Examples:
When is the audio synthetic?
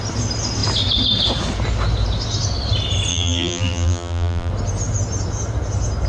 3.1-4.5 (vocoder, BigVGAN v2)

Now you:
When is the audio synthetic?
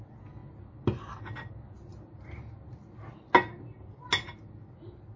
none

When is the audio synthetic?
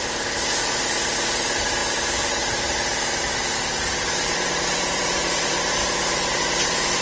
0.0-1.8 (vocoder, BigVGAN v2); 2.3-2.9; 4.0-5.8; 6.3-7.0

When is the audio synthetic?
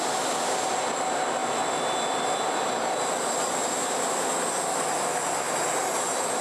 none